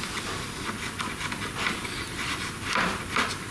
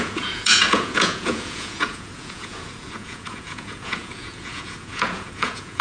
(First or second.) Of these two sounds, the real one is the first